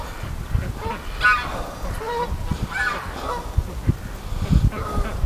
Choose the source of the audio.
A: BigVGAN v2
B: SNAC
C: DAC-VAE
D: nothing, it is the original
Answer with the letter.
D